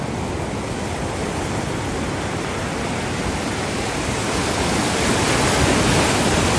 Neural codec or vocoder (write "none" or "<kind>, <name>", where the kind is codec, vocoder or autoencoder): none